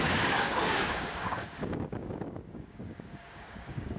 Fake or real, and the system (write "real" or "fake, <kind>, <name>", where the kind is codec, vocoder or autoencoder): fake, codec, DAC